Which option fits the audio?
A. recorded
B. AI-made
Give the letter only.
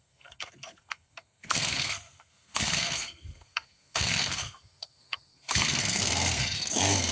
B